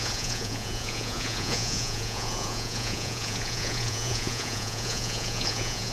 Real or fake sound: fake